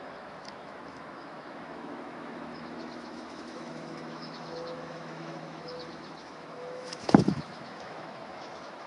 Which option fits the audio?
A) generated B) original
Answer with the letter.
A